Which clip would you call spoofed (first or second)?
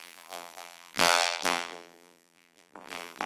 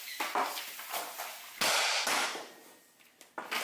first